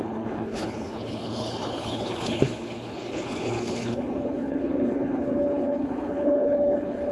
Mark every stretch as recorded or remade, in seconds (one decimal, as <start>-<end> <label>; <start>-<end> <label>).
0.0-7.1 remade